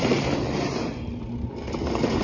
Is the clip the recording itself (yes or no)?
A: yes